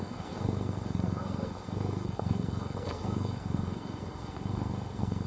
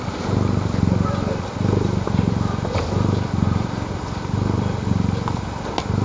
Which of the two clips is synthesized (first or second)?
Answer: first